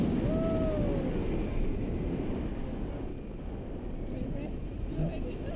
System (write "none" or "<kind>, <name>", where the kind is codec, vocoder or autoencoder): none